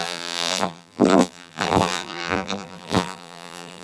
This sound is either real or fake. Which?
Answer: fake